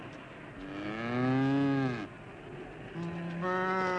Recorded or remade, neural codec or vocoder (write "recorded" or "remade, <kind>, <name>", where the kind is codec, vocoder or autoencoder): recorded